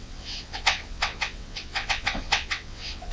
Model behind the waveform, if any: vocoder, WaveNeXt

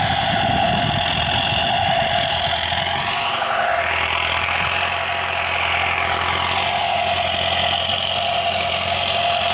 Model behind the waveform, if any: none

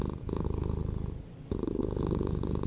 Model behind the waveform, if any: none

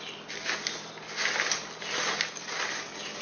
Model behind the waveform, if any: none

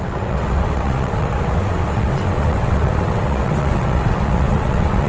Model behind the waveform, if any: vocoder, WaveNeXt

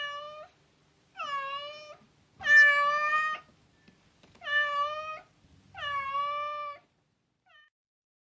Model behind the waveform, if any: none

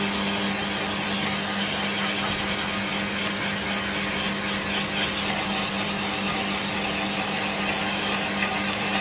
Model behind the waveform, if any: none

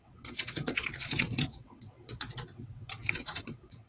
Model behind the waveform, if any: vocoder, WaveNeXt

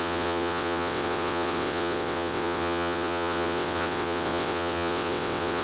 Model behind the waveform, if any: vocoder, WaveNeXt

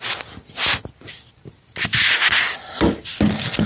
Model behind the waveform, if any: none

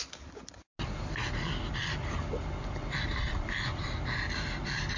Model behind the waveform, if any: none